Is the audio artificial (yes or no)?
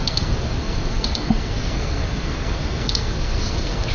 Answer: yes